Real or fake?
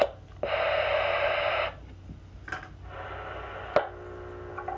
real